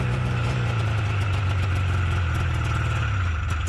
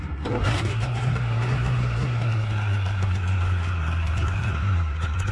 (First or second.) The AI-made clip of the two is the second